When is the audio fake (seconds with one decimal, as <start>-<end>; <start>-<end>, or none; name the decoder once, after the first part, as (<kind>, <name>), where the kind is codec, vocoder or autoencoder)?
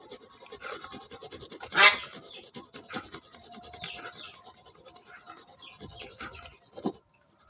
none